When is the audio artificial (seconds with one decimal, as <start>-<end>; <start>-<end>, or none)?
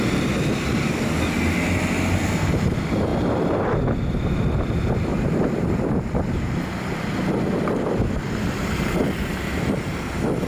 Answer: 3.1-3.6; 5.1-6.6